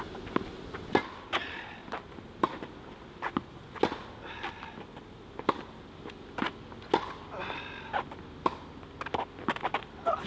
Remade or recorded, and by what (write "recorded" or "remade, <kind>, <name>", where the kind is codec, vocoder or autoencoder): recorded